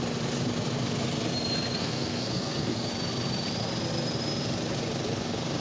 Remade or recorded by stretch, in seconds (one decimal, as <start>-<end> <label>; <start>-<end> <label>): 0.0-1.8 recorded; 1.8-2.9 remade; 2.9-5.6 recorded